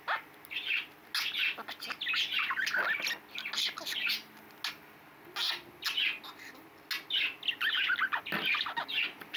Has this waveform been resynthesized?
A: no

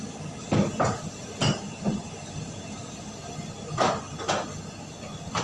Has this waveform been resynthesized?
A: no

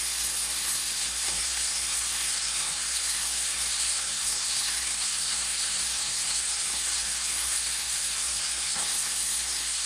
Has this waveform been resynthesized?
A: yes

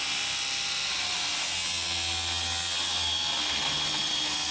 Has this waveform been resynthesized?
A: no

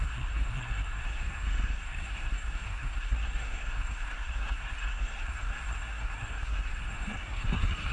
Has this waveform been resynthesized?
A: yes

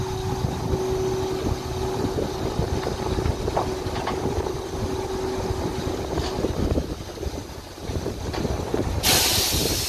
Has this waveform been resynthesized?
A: no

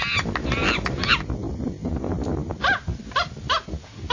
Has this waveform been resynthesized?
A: no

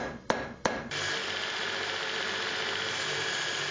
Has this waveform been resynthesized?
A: no